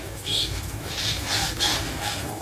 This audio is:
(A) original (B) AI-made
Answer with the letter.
B